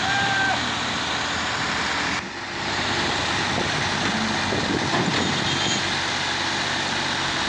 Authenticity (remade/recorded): recorded